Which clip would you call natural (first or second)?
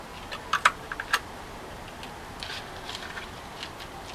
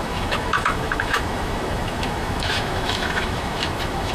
first